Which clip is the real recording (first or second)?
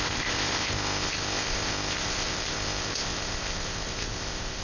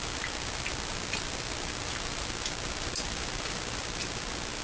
second